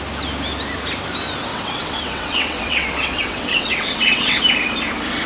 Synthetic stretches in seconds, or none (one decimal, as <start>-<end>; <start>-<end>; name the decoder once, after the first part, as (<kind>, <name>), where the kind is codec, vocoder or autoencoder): 1.5-4.4 (vocoder, WaveNeXt)